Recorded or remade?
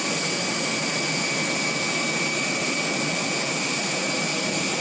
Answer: recorded